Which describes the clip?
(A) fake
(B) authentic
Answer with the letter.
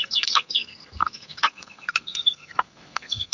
A